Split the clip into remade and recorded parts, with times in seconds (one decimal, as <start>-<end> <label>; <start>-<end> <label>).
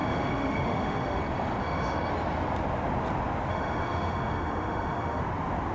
0.0-1.2 remade; 1.2-1.6 recorded; 1.6-2.1 remade; 2.1-3.5 recorded; 3.5-5.2 remade; 5.2-5.7 recorded